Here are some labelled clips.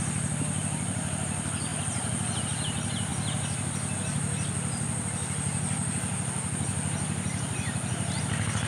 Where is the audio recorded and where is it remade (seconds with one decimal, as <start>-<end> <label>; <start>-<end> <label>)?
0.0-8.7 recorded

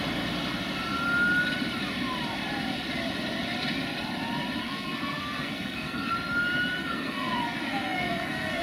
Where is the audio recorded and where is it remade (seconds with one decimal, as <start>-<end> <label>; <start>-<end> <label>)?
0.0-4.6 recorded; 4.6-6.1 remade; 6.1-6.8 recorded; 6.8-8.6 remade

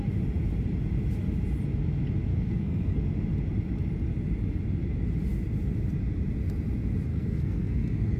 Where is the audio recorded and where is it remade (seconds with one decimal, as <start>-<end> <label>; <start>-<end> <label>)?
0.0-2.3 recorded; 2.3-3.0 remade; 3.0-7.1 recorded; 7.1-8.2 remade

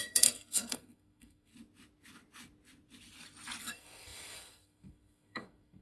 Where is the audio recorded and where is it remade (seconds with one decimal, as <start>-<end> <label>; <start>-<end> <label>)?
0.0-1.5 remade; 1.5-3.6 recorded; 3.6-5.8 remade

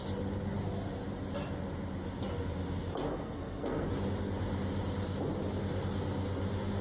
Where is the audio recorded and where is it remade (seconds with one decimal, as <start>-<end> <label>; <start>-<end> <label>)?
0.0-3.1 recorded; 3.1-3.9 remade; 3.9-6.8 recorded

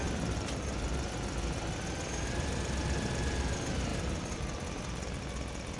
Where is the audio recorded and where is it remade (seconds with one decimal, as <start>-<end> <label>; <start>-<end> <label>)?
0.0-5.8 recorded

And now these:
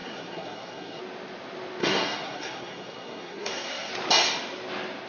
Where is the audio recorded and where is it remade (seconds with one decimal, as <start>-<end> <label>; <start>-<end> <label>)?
0.0-1.0 remade; 1.0-1.8 recorded; 1.8-3.9 remade; 3.9-5.1 recorded

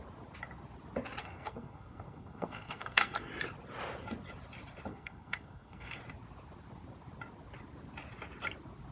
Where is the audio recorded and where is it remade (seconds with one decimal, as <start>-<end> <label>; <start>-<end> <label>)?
0.0-1.2 recorded; 1.2-3.3 remade; 3.3-4.9 recorded; 4.9-6.0 remade; 6.0-8.9 recorded